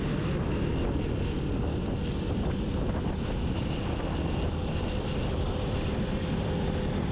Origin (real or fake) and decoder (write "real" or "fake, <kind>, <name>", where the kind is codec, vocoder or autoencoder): real